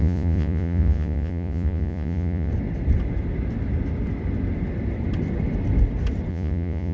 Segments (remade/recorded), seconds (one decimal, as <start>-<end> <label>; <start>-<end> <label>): 0.0-2.5 remade; 2.5-6.3 recorded; 6.3-6.9 remade